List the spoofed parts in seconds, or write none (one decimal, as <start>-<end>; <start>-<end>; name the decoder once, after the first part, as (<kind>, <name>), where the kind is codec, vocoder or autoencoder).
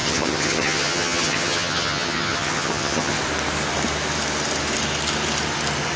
0.0-3.2 (vocoder, HiFi-GAN)